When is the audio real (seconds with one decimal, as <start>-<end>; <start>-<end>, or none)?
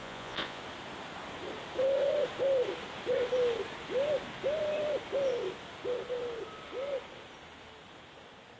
0.6-8.6